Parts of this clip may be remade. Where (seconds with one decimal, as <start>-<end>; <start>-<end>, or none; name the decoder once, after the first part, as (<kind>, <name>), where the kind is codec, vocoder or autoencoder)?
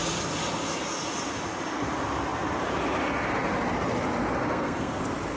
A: 4.4-5.0 (codec, SNAC)